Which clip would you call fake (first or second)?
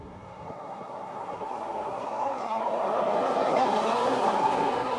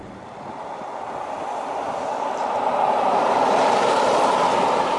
first